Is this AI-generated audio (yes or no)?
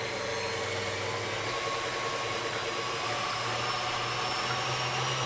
no